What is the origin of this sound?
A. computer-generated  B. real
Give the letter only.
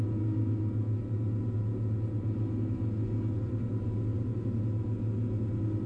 B